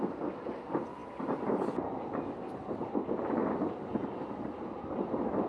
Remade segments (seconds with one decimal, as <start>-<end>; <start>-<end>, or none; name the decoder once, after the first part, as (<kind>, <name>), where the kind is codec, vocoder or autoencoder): none